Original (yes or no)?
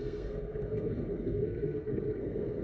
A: no